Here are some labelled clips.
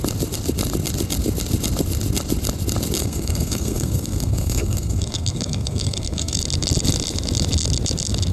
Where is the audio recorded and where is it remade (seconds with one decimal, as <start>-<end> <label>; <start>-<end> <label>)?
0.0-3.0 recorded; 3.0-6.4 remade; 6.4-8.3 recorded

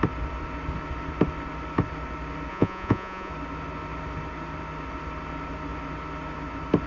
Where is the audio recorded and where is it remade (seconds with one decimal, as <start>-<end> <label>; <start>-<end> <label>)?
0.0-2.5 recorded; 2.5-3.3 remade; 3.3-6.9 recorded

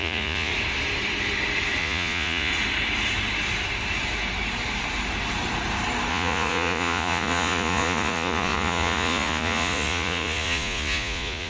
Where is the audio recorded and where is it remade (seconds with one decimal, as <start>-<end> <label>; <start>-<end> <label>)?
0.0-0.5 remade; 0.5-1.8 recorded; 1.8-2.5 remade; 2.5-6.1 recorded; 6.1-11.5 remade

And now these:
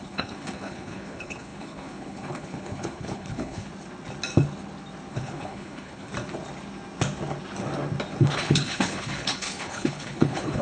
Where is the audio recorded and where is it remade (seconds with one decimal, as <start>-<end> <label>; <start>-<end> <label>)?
0.0-3.7 remade; 3.7-5.1 recorded; 5.1-6.1 remade; 6.1-8.2 recorded; 8.2-10.6 remade

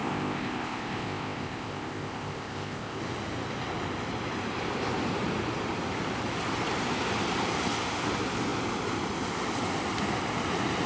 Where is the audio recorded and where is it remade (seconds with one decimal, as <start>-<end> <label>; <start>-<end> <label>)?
0.0-3.0 remade; 3.0-10.9 recorded

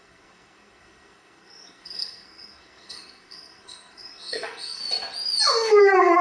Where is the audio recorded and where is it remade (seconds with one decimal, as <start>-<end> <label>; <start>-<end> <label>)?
0.0-4.8 remade; 4.8-5.8 recorded; 5.8-6.2 remade

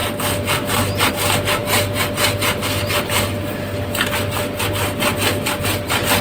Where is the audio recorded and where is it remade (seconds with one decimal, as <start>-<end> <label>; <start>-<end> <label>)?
0.0-6.2 recorded